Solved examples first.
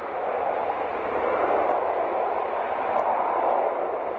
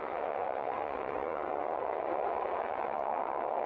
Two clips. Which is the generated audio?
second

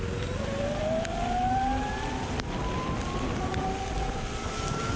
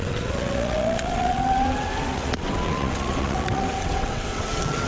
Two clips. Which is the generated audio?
second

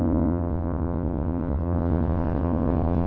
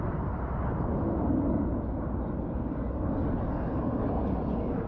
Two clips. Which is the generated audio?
first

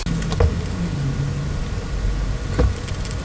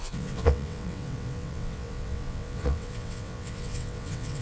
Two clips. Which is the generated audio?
second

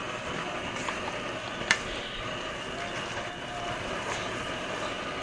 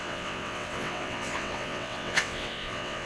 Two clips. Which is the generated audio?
second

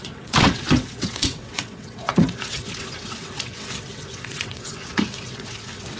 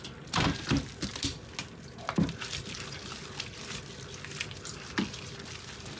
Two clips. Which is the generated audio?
first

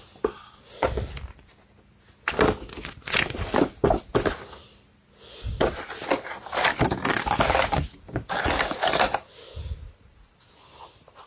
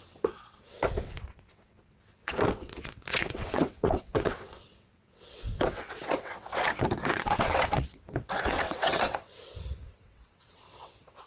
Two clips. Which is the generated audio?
second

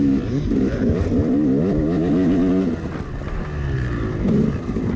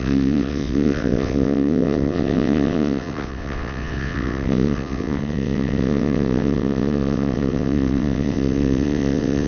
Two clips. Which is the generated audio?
second